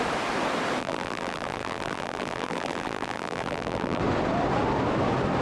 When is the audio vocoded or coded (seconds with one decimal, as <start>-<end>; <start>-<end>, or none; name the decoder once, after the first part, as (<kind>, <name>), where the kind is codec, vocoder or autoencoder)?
0.8-4.0 (vocoder, BigVGAN v2)